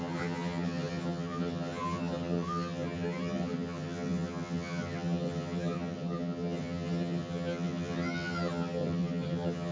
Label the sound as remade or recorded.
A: remade